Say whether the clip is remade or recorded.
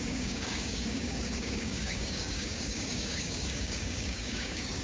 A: remade